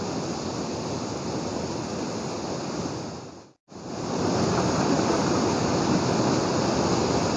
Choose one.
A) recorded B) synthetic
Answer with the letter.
A